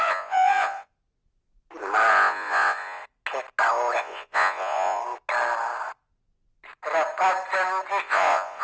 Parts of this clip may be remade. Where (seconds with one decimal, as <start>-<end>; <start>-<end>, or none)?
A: 0.0-0.9; 2.1-3.0; 4.0-5.0; 8.0-8.6